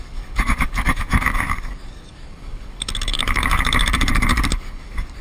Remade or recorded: remade